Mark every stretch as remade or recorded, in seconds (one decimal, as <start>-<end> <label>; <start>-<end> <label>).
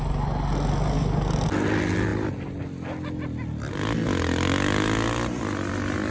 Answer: 0.0-6.1 recorded